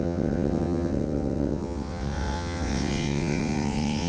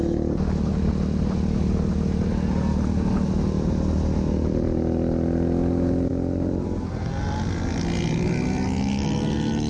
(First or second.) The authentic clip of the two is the second